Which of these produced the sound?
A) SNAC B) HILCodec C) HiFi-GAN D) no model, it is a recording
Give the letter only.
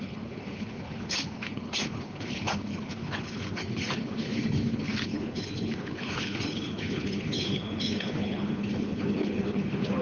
B